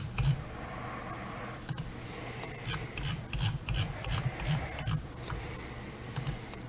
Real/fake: real